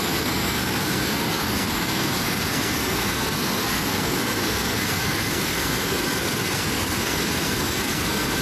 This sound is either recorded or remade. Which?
remade